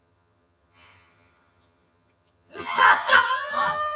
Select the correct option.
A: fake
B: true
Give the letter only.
A